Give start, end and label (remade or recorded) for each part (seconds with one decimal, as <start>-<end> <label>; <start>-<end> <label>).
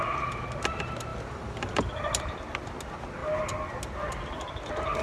0.0-1.1 recorded; 1.1-2.2 remade; 2.2-5.0 recorded